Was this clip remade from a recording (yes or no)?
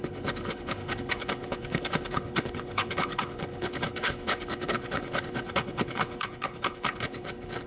yes